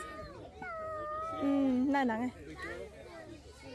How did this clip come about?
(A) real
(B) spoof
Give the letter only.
A